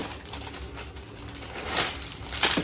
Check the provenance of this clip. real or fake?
real